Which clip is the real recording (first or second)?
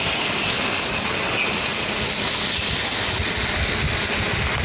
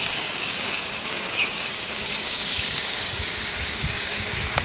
first